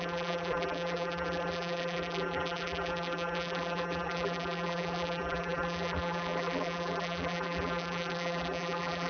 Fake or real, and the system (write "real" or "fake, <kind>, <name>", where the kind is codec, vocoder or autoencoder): fake, vocoder, BigVGAN v2